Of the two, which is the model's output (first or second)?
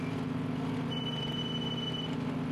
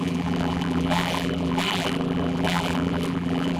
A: second